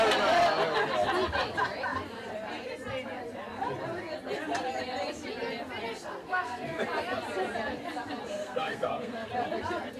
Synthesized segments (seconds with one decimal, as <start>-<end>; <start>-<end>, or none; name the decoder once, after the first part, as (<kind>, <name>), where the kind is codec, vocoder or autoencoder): 6.2-6.8 (codec, SNAC); 8.3-9.3